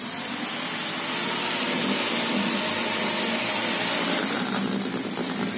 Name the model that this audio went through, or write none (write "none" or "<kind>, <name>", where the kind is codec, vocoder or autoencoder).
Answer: none